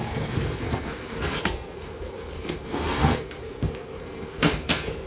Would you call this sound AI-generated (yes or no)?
yes